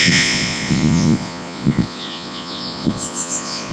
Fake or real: fake